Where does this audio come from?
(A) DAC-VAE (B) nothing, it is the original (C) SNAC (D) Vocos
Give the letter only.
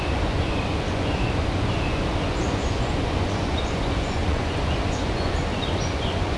D